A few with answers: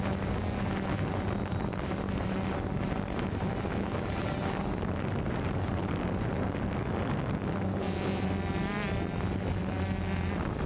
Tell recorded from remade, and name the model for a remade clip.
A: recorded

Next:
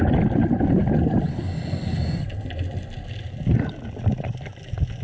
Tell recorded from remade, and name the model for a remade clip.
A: recorded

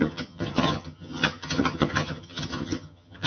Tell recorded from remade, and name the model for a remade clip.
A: remade, vocoder, HiFi-GAN